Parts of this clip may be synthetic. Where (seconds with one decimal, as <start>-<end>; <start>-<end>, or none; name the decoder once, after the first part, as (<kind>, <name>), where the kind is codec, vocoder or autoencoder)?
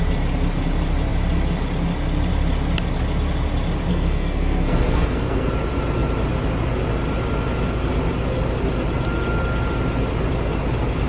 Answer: 3.9-5.5 (codec, SNAC)